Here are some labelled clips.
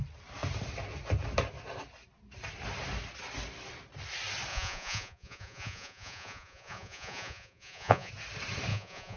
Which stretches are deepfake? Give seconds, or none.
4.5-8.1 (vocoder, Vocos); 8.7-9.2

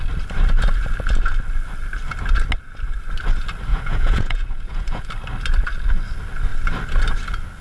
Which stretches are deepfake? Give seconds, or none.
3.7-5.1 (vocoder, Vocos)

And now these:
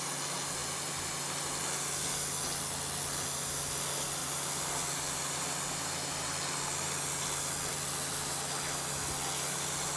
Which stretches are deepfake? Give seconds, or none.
none